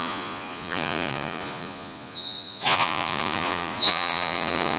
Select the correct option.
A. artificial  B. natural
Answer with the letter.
A